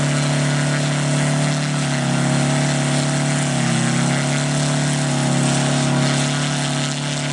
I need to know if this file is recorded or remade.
recorded